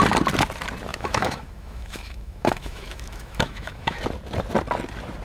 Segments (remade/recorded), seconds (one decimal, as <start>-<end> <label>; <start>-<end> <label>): 0.0-0.9 recorded; 0.9-4.0 remade; 4.0-5.2 recorded